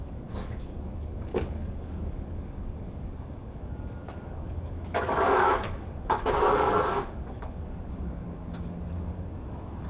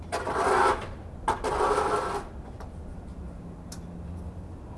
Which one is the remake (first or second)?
first